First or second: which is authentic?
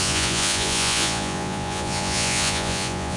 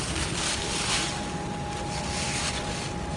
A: second